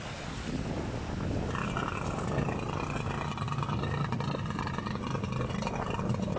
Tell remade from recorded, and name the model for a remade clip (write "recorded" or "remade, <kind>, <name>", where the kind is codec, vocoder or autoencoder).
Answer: recorded